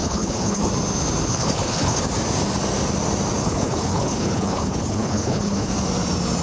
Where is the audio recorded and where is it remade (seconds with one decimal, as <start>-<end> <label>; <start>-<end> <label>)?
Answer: 0.0-0.7 remade; 0.7-1.3 recorded; 1.3-2.0 remade; 2.0-3.4 recorded; 3.4-5.7 remade; 5.7-6.4 recorded